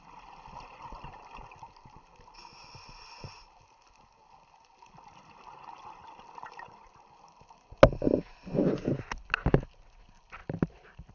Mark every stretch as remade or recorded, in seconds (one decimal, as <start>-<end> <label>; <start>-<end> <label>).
0.0-11.1 recorded